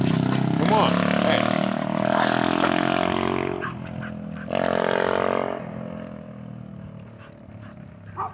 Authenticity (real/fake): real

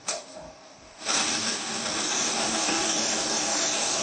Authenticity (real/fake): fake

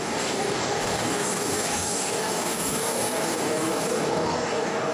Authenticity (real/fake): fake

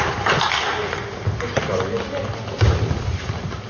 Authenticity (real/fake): real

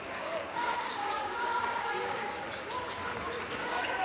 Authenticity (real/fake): fake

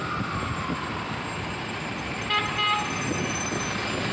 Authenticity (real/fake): real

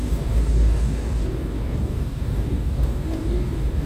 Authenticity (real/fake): fake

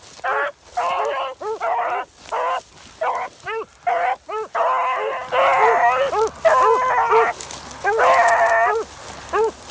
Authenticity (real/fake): real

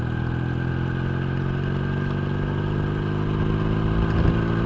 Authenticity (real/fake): real